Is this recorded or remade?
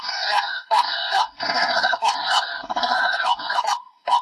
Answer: remade